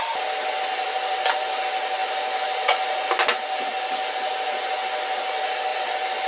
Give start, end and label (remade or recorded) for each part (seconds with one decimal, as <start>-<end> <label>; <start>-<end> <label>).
0.0-6.3 recorded